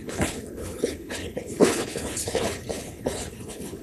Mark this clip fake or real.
fake